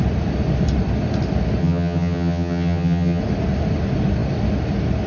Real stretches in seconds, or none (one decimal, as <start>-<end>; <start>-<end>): 0.0-1.6; 3.2-5.1